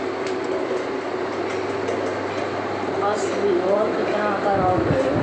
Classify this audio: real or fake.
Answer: real